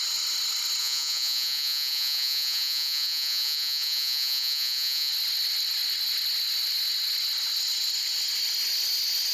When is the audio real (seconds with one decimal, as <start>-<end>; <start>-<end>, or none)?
0.0-0.8; 5.1-9.3